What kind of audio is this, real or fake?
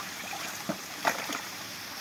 fake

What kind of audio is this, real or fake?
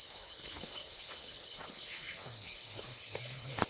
fake